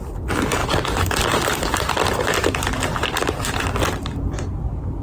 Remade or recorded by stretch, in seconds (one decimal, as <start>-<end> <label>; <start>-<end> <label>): 0.0-5.0 recorded